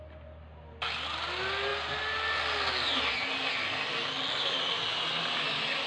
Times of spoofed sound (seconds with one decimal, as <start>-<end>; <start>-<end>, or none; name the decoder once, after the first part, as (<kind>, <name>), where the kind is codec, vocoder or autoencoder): none